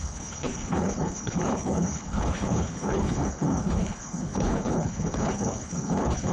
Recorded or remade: remade